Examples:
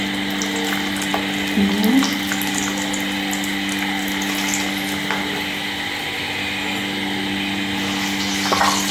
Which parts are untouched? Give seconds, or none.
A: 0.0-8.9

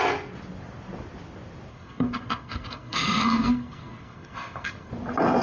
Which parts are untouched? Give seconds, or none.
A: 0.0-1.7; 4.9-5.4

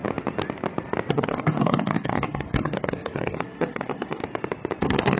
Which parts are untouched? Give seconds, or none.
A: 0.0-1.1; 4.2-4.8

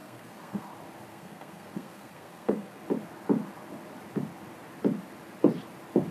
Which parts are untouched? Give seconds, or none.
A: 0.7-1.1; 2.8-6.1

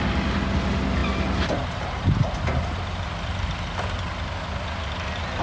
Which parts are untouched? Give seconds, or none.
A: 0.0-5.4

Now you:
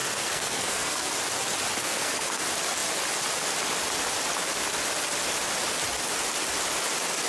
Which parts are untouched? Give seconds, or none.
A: 1.1-1.8; 2.4-7.3